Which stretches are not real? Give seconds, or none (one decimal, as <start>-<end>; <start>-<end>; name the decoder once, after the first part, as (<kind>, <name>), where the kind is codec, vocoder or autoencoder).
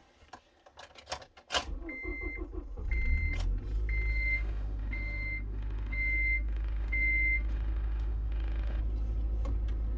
4.1-8.8 (autoencoder, DAC-VAE)